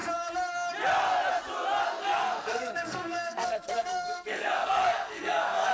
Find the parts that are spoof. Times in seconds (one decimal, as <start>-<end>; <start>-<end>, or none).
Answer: 2.0-5.7